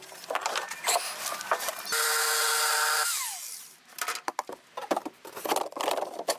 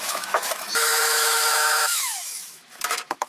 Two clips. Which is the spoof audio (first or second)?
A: second